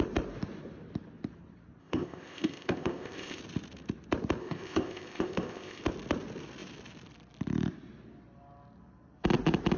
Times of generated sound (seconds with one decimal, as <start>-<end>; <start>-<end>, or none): 1.8-3.4; 4.4-5.8